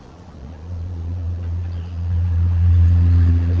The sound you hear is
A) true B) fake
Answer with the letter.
B